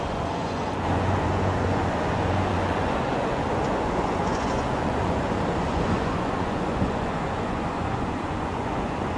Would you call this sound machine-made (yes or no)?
yes